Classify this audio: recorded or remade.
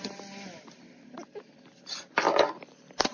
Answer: recorded